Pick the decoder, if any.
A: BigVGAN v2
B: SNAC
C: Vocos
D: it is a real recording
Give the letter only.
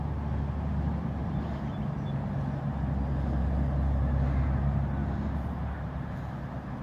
D